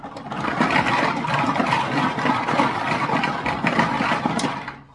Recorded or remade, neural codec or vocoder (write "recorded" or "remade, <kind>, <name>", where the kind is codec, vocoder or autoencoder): remade, vocoder, BigVGAN v2